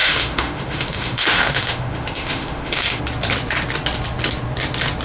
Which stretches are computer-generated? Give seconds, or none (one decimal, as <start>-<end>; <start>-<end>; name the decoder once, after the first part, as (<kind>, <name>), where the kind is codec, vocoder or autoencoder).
0.0-3.0 (autoencoder, DAC-VAE)